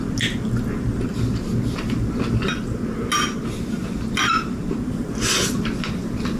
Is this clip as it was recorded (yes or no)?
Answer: yes